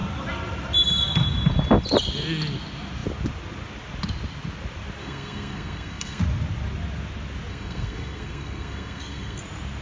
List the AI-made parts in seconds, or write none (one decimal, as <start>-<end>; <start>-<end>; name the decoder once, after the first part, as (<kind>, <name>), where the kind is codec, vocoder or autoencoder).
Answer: 5.0-6.2 (codec, SNAC); 7.5-9.4